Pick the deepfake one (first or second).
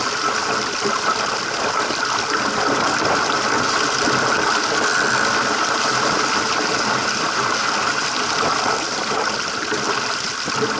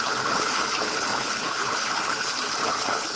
second